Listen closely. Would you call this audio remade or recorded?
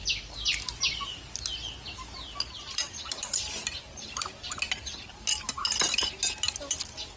recorded